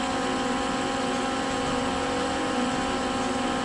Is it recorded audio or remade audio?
recorded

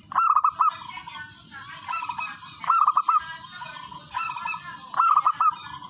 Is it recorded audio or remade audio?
recorded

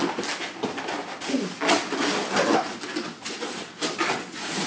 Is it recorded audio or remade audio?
recorded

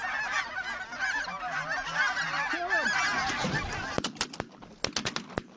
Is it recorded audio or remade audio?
recorded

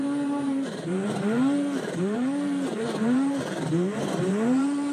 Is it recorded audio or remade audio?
remade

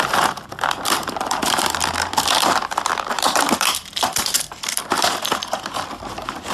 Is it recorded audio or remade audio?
remade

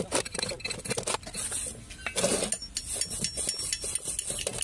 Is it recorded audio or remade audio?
recorded